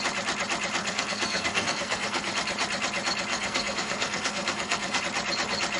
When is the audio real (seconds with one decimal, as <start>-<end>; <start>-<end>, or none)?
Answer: 0.0-0.8; 2.3-3.3; 5.0-5.8